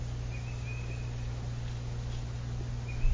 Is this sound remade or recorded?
recorded